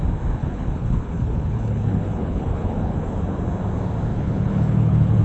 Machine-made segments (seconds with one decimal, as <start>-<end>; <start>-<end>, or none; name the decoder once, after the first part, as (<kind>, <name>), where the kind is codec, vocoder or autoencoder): 0.4-3.4 (codec, HILCodec); 4.1-5.2